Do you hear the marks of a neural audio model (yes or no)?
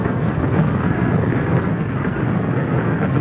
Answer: yes